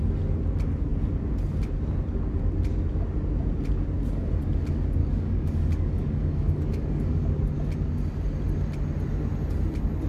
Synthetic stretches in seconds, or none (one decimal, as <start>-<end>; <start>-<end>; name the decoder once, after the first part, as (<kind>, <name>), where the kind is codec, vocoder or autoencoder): 5.0-7.4 (codec, DAC)